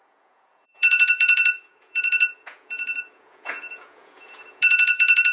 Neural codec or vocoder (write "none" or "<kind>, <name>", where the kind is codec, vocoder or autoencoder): vocoder, Vocos